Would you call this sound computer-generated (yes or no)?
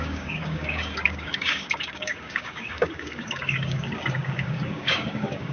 yes